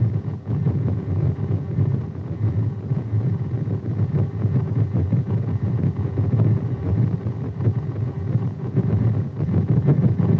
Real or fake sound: fake